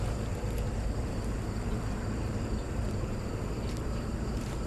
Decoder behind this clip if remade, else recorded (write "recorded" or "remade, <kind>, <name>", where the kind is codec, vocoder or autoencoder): remade, vocoder, BigVGAN v2